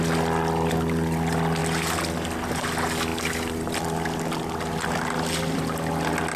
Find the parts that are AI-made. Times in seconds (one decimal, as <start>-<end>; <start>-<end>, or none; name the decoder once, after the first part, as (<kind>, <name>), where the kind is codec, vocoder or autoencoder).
none